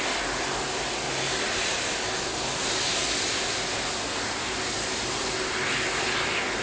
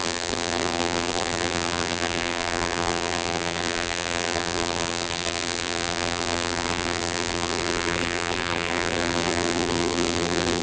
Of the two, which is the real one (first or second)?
first